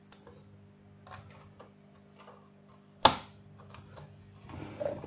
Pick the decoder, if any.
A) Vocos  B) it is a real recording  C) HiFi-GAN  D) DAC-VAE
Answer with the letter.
B